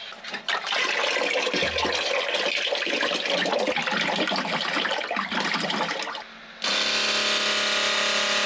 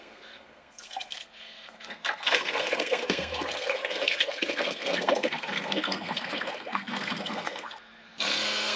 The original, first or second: first